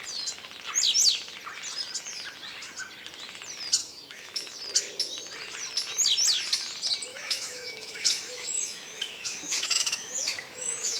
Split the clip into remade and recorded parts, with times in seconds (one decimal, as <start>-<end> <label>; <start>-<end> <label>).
0.0-3.8 recorded; 3.8-4.6 remade; 4.6-7.1 recorded; 7.1-11.0 remade